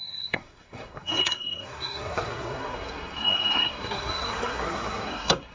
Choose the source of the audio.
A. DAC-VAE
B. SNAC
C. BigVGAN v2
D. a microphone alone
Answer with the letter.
B